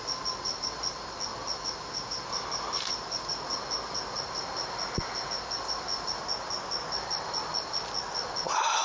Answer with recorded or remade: recorded